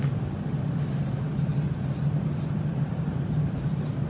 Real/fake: real